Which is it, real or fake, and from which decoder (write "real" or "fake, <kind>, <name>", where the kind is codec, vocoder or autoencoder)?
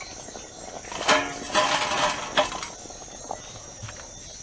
real